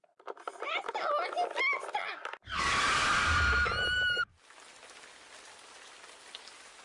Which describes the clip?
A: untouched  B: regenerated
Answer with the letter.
A